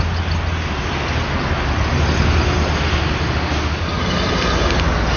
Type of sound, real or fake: real